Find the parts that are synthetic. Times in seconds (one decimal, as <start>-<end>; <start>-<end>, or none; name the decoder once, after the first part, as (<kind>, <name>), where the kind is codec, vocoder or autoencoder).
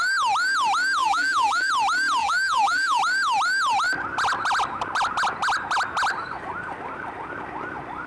1.0-1.7 (vocoder, BigVGAN v2); 2.2-3.0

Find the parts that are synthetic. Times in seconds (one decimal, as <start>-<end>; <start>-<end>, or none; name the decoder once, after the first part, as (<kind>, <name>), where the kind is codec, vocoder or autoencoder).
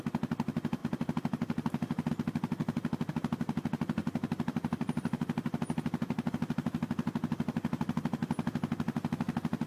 0.8-2.1 (vocoder, BigVGAN v2); 4.0-6.3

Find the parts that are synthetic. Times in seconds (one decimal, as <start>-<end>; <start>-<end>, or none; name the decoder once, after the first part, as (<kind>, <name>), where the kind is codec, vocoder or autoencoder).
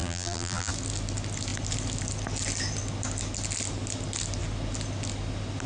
0.0-0.7 (vocoder, BigVGAN v2)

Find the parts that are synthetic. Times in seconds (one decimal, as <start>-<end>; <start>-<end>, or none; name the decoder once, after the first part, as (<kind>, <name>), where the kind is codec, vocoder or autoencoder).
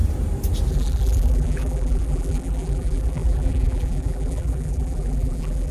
0.7-5.7 (vocoder, BigVGAN v2)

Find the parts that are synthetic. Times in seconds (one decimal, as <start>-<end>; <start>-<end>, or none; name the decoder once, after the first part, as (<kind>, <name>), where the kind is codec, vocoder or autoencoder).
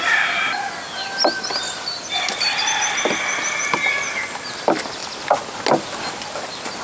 0.0-5.0 (vocoder, BigVGAN v2); 5.8-6.8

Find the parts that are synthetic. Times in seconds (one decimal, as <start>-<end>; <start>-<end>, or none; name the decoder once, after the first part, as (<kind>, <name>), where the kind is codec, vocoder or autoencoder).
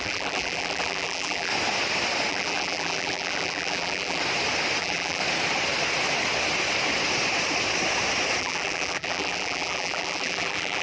0.0-1.5 (vocoder, BigVGAN v2); 2.3-4.2; 4.8-5.2; 8.4-10.8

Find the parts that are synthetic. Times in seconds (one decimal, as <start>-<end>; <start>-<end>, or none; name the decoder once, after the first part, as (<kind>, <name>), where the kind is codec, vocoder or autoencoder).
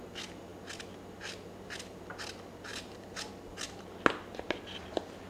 2.7-3.3 (vocoder, BigVGAN v2)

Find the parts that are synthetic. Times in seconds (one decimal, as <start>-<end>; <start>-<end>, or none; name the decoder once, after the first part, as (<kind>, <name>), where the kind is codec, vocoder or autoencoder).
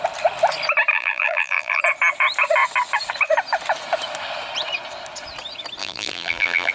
0.9-1.8 (vocoder, BigVGAN v2); 5.8-6.7